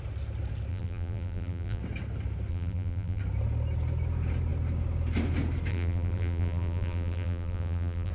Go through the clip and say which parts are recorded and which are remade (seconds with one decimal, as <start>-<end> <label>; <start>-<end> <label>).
0.0-0.7 recorded; 0.7-1.8 remade; 1.8-2.5 recorded; 2.5-3.2 remade; 3.2-5.7 recorded; 5.7-8.1 remade